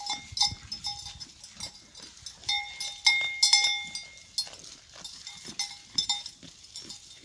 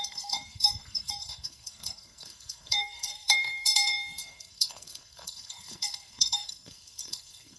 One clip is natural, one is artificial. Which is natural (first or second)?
first